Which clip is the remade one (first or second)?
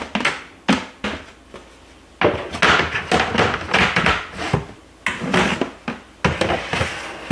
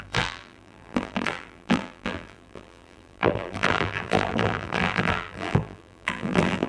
second